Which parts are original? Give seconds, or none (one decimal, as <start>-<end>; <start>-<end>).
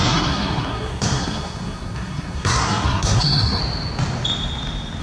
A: 3.6-5.0